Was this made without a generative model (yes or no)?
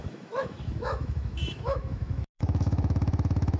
no